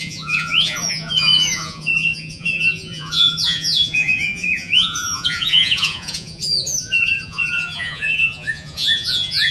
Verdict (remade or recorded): remade